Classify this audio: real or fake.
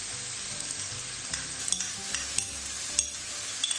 real